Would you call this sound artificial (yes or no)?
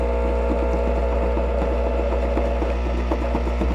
no